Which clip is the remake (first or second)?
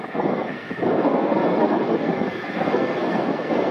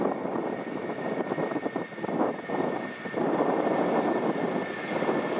first